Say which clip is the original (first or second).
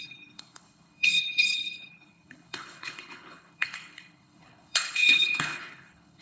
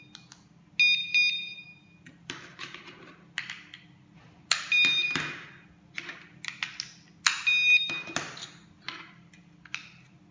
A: second